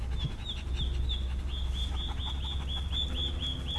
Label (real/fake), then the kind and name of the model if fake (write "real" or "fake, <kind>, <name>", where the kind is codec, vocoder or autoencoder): real